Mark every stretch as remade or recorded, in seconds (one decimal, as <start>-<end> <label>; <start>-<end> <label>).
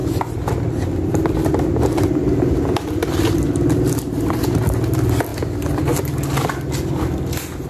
0.0-7.7 recorded